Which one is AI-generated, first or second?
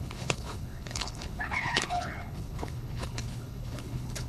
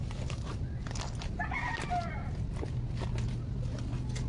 first